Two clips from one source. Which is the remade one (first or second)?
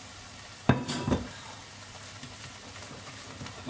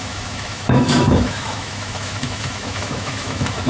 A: second